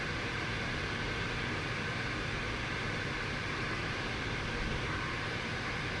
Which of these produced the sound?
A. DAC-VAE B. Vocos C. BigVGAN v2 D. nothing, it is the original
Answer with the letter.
C